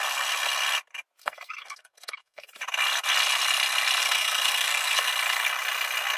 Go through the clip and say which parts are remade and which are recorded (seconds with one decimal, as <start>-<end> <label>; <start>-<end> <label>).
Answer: 0.0-1.2 recorded; 1.2-2.5 remade; 2.5-4.0 recorded; 4.0-5.1 remade; 5.1-6.2 recorded